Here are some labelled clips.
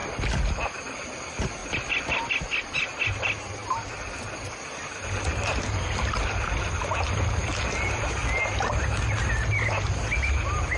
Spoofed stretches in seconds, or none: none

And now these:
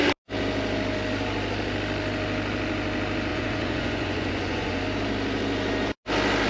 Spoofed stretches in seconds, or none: 3.3-4.8